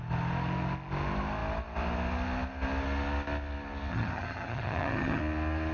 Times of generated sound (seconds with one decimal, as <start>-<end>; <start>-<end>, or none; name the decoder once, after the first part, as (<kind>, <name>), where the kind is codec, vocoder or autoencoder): 3.9-5.2 (vocoder, HiFi-GAN)